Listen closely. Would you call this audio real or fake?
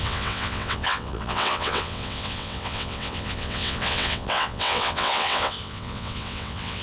fake